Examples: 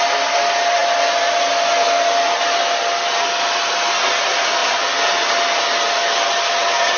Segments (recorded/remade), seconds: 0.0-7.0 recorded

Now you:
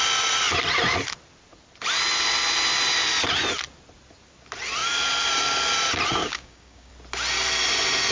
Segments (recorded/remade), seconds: 0.0-6.2 recorded; 6.2-6.9 remade; 6.9-8.1 recorded

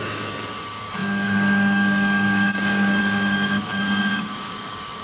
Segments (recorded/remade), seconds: 0.0-5.0 remade

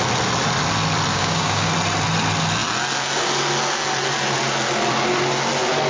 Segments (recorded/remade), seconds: 0.0-1.1 recorded; 1.1-1.7 remade; 1.7-5.9 recorded

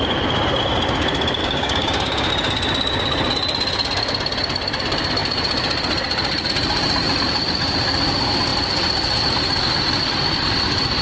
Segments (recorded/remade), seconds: 0.0-1.4 recorded; 1.4-2.3 remade; 2.3-11.0 recorded